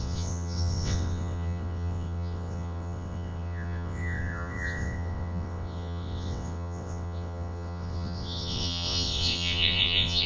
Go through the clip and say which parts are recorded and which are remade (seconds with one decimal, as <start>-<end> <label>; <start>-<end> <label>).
0.0-10.3 remade